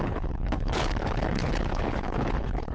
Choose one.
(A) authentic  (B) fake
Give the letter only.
B